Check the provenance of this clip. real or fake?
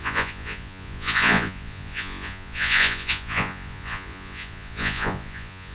fake